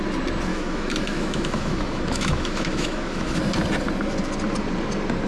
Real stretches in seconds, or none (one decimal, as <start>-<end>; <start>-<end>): 0.0-0.5; 3.4-5.3